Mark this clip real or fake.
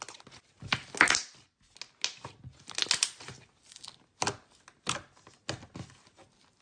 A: real